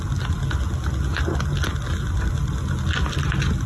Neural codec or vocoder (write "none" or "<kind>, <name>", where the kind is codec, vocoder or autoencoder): none